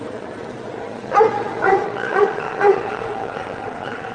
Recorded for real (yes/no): no